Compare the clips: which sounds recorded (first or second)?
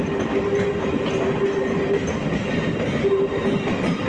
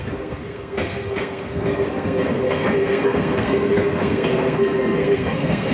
first